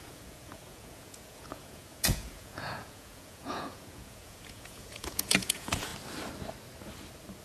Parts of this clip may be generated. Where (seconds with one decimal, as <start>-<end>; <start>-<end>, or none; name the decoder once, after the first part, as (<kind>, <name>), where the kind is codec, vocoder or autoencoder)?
0.0-5.9 (vocoder, Vocos)